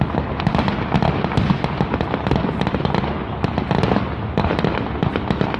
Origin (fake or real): real